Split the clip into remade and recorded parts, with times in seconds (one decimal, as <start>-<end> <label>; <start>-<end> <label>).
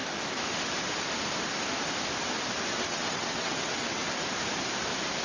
0.0-2.7 recorded; 2.7-4.0 remade; 4.0-5.2 recorded